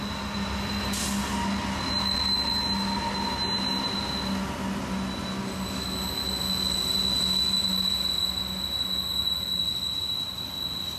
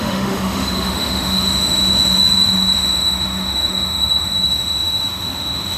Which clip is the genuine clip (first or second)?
first